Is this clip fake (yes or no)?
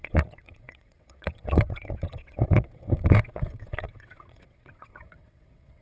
yes